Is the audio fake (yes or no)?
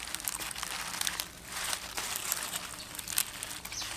no